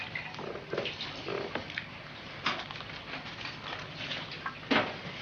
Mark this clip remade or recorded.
recorded